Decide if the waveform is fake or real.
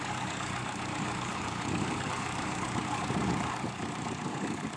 fake